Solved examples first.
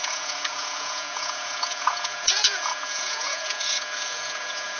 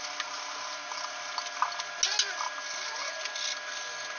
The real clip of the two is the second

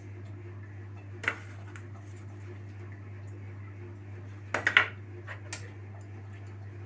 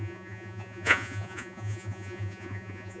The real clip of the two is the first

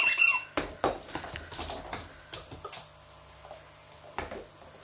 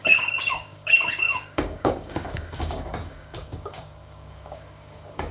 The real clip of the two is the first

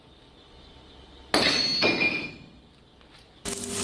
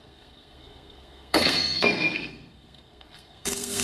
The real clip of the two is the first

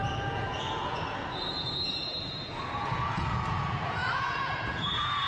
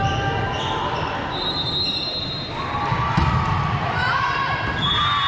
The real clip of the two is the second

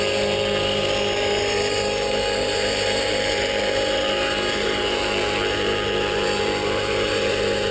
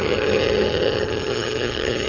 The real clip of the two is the first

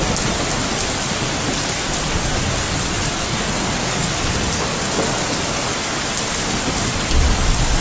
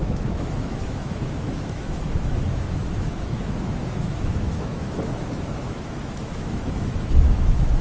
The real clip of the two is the first